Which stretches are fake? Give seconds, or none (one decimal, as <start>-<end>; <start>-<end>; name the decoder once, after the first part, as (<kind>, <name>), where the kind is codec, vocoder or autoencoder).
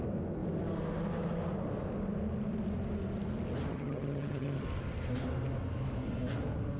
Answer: 3.7-4.6 (vocoder, HiFi-GAN)